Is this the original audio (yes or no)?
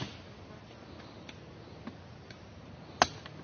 yes